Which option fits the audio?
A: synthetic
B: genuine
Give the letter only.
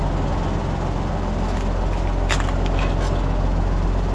B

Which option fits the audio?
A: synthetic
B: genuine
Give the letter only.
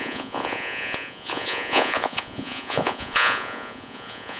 A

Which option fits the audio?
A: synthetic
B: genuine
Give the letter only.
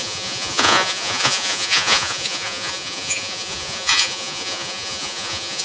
A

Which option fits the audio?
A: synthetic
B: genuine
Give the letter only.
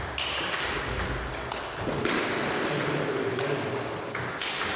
B